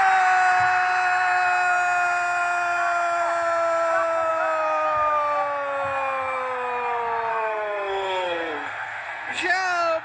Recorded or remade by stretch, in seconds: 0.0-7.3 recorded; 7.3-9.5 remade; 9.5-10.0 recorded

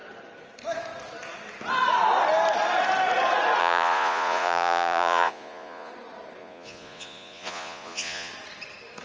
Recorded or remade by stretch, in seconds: 0.0-3.6 recorded; 3.6-5.9 remade; 5.9-6.4 recorded; 6.4-8.3 remade; 8.3-9.0 recorded

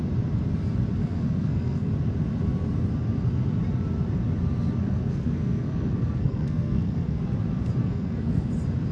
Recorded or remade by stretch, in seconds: 0.0-1.0 recorded; 1.0-1.9 remade; 1.9-4.8 recorded; 4.8-7.2 remade; 7.2-7.8 recorded; 7.8-8.5 remade; 8.5-8.9 recorded

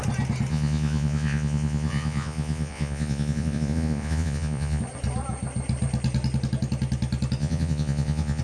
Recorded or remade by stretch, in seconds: 0.0-0.5 recorded; 0.5-4.8 remade; 4.8-7.4 recorded; 7.4-8.4 remade

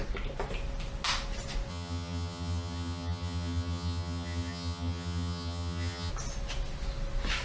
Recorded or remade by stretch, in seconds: 0.0-1.7 recorded; 1.7-6.1 remade; 6.1-7.4 recorded

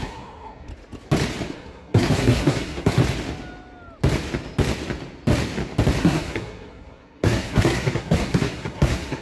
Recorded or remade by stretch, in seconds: 0.0-0.7 remade; 0.7-1.5 recorded; 1.5-3.0 remade; 3.0-6.0 recorded; 6.0-9.2 remade

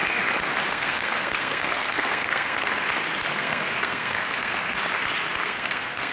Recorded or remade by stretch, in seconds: 0.0-0.7 recorded; 0.7-2.7 remade; 2.7-3.3 recorded; 3.3-4.8 remade; 4.8-5.4 recorded; 5.4-6.1 remade

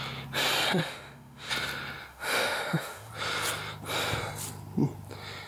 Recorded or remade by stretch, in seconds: 0.0-0.8 recorded; 0.8-1.5 remade; 1.5-2.1 recorded; 2.1-3.1 remade; 3.1-5.5 recorded